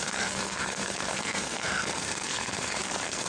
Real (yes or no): no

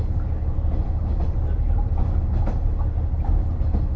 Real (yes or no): yes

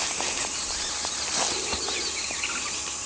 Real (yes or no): yes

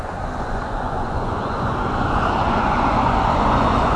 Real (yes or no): no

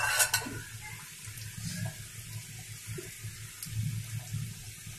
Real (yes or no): yes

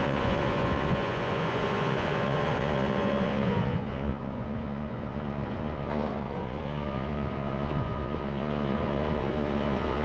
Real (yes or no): no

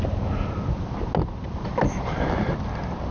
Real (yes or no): yes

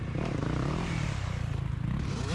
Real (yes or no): no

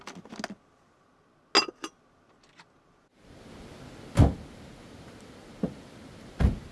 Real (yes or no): yes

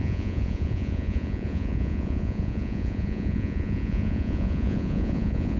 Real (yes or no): no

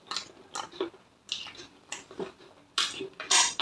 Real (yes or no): yes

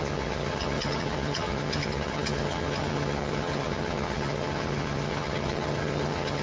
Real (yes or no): no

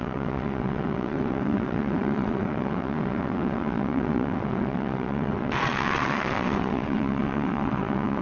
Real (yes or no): no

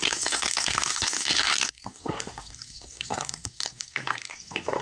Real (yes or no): no